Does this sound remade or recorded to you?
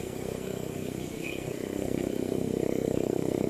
remade